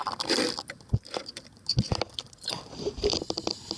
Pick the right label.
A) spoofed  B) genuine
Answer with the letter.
B